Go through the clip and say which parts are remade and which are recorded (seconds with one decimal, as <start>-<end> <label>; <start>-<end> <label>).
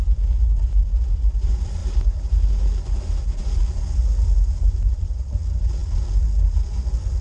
0.0-7.2 recorded